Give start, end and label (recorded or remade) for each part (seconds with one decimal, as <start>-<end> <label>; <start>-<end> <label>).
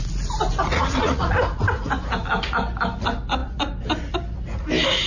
0.0-0.7 recorded; 0.7-1.3 remade; 1.3-5.1 recorded